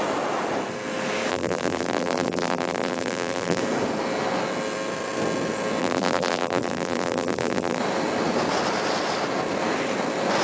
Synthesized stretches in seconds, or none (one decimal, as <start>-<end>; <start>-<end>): 1.3-3.6; 5.8-7.8